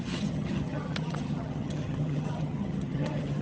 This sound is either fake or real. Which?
fake